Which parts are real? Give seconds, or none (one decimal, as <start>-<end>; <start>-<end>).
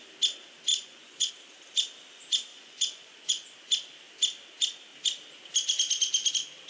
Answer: 0.0-0.7; 1.3-2.5; 3.7-6.7